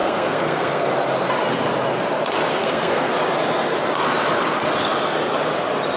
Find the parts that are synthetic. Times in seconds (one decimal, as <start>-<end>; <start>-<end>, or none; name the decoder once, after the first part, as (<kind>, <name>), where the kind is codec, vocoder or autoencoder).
0.0-0.9 (codec, SNAC); 2.5-3.1